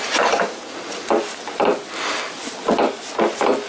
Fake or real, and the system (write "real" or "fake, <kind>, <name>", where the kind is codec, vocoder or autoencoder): real